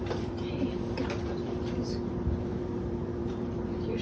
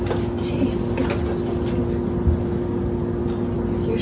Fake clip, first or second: first